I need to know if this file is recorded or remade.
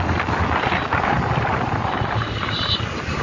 recorded